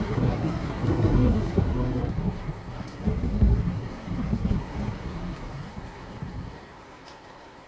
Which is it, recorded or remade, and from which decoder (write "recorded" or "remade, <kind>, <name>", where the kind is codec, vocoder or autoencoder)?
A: remade, codec, SNAC